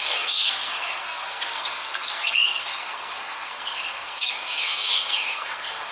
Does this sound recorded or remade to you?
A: remade